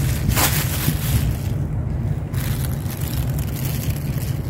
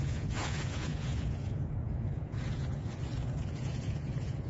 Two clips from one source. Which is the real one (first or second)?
first